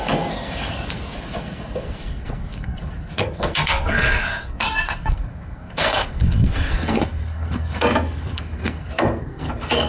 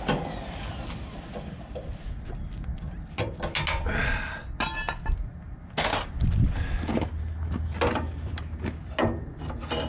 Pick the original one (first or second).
second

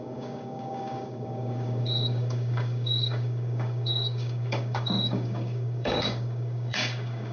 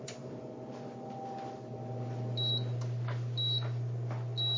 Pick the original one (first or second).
second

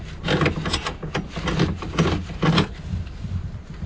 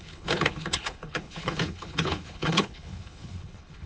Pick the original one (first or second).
first